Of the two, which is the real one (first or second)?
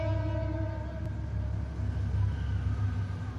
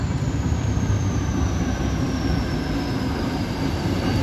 first